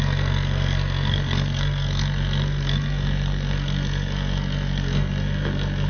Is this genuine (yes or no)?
no